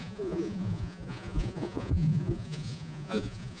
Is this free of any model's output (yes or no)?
no